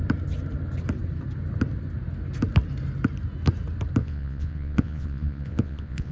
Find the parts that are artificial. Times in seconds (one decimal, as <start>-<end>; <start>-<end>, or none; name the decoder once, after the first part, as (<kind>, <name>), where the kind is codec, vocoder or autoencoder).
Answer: 4.0-6.1 (vocoder, Vocos)